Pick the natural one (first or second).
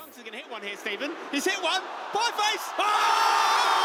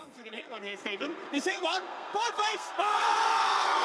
first